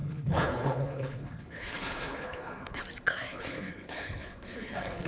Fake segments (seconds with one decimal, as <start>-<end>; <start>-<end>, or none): 0.0-2.8; 3.3-5.1